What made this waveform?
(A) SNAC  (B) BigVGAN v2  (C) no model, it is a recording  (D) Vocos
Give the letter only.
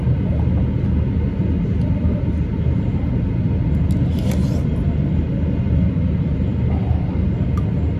C